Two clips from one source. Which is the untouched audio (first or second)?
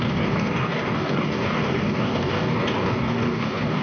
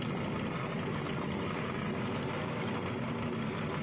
second